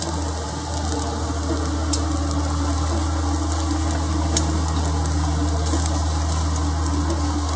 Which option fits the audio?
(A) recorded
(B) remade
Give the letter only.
A